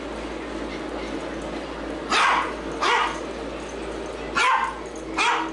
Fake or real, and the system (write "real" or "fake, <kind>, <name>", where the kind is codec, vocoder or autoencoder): real